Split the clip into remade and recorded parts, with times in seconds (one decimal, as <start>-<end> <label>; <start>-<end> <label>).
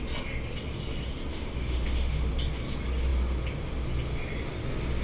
0.0-1.3 recorded; 1.3-2.3 remade; 2.3-5.0 recorded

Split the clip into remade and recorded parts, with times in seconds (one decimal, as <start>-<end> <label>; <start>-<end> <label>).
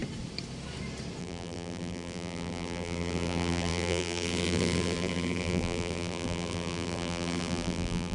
0.0-1.2 recorded; 1.2-8.1 remade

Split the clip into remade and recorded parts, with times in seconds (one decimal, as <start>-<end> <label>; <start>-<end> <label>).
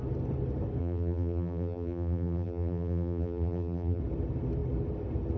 0.0-0.8 recorded; 0.8-4.0 remade; 4.0-5.4 recorded